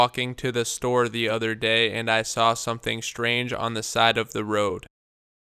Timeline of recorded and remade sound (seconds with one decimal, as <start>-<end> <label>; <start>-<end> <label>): 0.0-1.3 recorded; 1.3-4.7 remade; 4.7-5.6 recorded